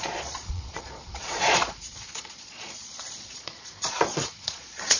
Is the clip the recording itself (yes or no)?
no